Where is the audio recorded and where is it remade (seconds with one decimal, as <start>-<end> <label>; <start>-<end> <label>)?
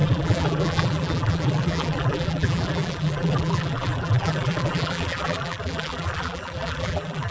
0.0-7.3 remade